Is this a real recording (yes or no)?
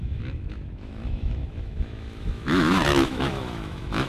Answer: no